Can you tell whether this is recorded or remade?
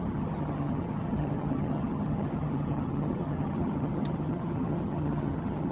remade